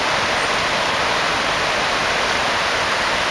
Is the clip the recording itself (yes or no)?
yes